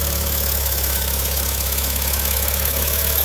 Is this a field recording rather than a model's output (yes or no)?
no